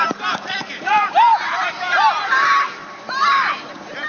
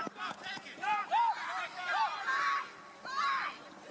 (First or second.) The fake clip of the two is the first